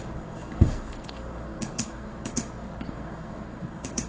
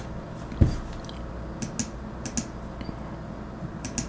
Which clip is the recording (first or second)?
second